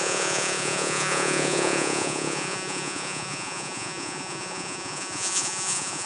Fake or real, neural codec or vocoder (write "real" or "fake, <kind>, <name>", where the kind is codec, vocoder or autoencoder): fake, vocoder, Vocos